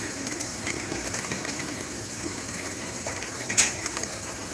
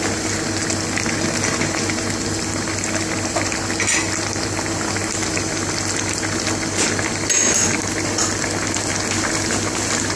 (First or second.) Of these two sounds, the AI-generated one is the first